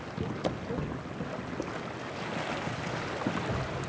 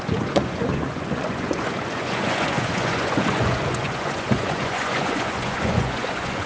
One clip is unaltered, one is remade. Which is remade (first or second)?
second